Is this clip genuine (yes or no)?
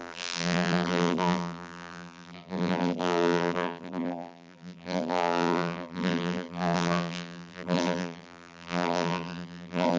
no